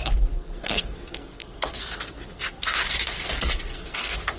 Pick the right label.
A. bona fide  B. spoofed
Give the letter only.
B